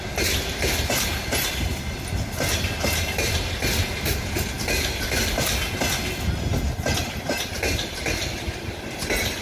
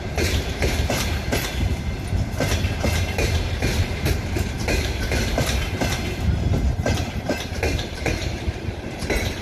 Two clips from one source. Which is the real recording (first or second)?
first